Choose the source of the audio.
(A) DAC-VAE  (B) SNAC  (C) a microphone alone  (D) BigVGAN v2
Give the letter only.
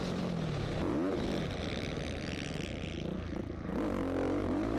C